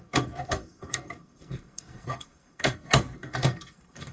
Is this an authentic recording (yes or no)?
no